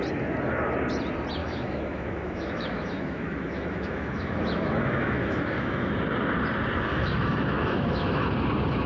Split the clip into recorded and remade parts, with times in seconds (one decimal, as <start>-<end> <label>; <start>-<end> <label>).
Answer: 0.0-1.4 recorded; 1.4-5.9 remade; 5.9-6.9 recorded; 6.9-8.2 remade; 8.2-8.9 recorded